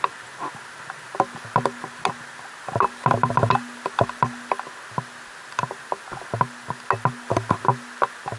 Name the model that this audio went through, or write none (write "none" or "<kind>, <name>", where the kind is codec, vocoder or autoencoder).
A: none